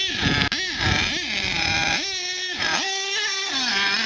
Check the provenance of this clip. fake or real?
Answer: real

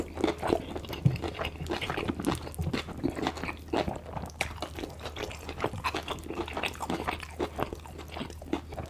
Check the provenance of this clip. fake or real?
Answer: real